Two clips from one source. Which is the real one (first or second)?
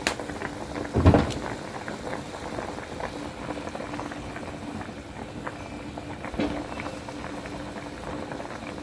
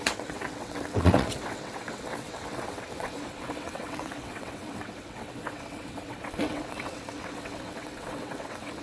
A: first